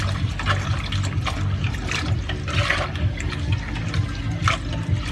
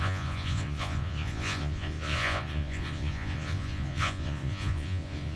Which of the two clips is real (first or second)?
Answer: first